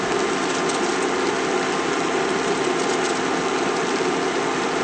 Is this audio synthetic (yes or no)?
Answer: no